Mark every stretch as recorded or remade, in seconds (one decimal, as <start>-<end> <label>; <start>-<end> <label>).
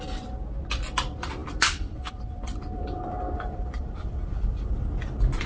0.0-1.4 recorded; 1.4-4.7 remade; 4.7-5.5 recorded